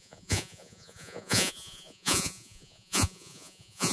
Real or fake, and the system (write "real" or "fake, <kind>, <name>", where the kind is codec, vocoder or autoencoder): fake, vocoder, Vocos